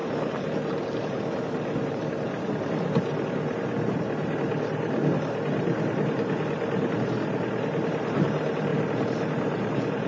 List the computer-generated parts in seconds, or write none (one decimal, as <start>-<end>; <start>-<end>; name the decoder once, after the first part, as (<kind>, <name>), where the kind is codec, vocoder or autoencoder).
none